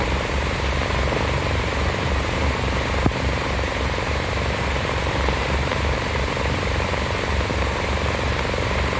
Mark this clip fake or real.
fake